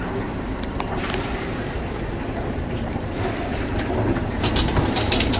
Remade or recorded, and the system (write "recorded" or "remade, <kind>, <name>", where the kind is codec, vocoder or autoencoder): remade, vocoder, BigVGAN v2